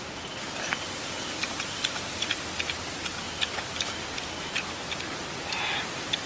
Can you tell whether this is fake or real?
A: real